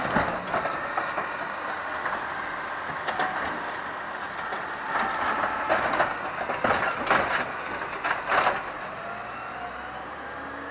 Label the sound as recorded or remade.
recorded